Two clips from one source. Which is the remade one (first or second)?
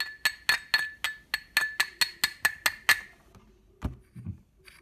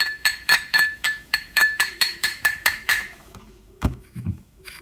second